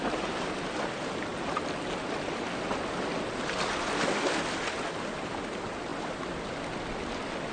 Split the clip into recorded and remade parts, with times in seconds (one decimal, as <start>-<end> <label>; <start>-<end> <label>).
0.0-7.5 recorded